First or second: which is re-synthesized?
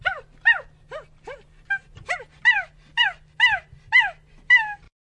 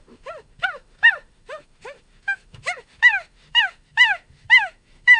second